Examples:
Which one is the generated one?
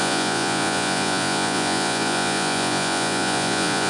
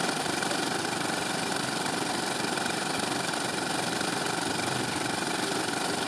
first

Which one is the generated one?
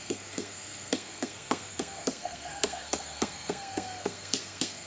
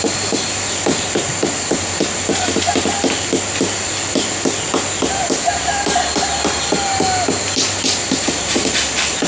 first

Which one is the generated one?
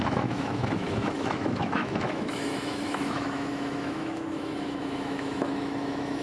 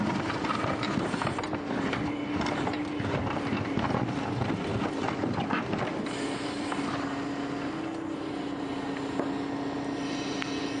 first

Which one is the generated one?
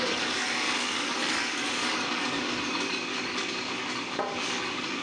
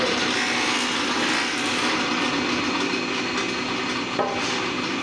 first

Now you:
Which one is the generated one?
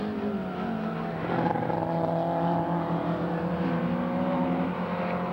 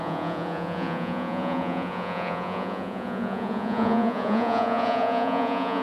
second